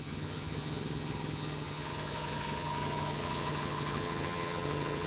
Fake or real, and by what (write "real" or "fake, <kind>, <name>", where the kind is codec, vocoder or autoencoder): fake, vocoder, HiFi-GAN